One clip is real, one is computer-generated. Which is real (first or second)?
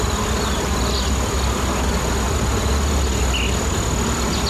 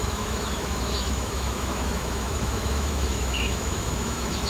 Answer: first